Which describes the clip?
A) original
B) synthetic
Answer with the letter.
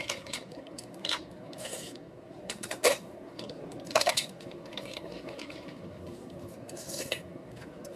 B